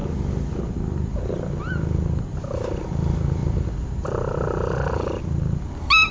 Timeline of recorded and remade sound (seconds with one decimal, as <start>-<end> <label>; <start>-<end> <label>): 0.0-6.1 recorded